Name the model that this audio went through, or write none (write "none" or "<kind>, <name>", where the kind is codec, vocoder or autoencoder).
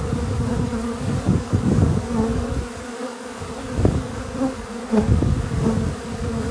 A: codec, DAC